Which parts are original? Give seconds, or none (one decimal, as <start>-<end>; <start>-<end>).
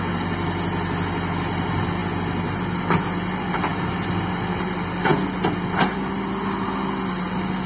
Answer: 0.0-7.7